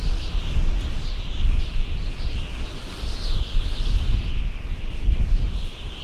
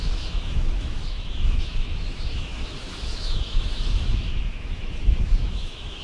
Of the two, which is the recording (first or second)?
first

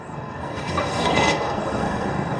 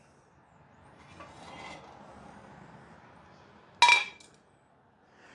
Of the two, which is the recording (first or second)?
second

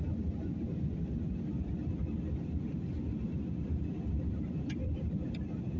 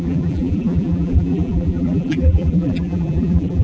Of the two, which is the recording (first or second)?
first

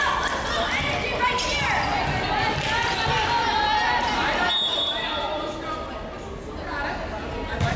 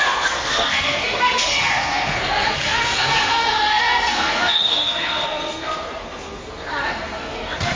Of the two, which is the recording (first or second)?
first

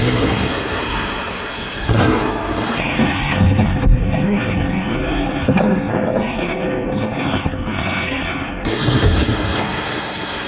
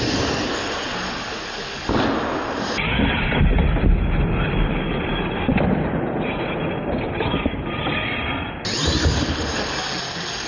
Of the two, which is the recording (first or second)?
second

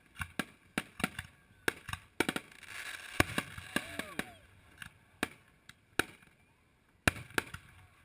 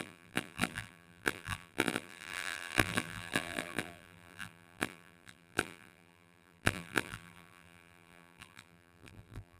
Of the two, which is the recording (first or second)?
first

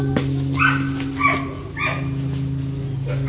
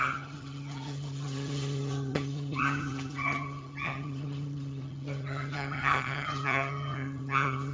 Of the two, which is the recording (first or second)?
first